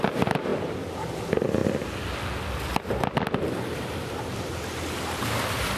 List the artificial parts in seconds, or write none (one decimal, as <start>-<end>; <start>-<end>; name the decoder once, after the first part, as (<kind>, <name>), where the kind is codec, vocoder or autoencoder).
none